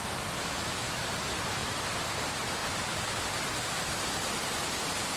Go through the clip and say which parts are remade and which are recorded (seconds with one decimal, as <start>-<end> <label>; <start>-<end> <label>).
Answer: 0.0-0.4 recorded; 0.4-1.0 remade; 1.0-5.2 recorded